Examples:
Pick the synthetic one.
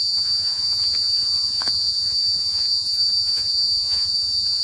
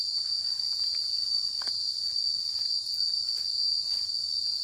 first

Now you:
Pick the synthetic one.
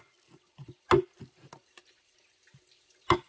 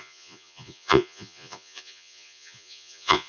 second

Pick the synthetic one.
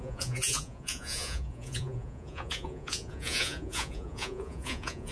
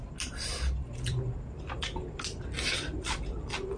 first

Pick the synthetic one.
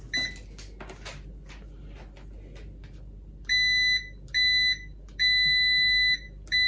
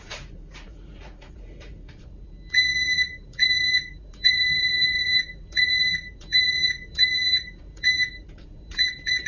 second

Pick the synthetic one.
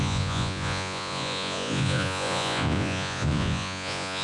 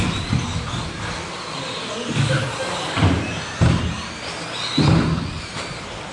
first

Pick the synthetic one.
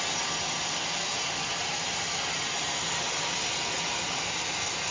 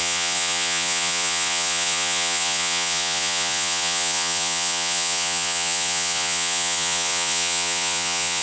second